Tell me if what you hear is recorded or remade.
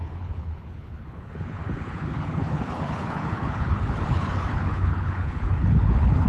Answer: remade